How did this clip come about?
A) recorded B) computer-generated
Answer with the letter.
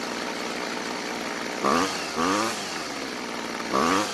A